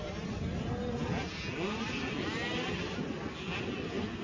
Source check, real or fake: real